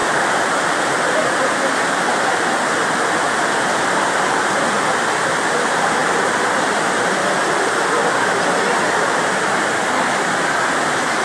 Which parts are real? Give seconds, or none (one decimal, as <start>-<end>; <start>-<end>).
0.9-6.0; 6.5-11.2